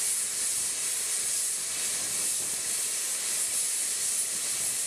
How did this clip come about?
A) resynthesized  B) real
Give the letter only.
B